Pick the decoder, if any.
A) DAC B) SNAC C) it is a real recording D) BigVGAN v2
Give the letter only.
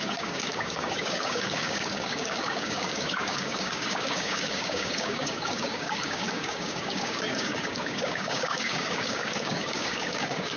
A